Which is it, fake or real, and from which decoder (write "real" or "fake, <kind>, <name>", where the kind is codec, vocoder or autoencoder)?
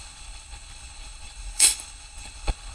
fake, codec, HILCodec